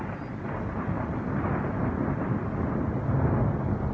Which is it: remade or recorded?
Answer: recorded